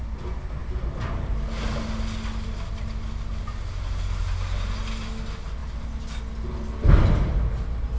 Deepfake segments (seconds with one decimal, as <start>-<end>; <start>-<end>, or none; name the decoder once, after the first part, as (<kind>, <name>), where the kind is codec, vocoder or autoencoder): none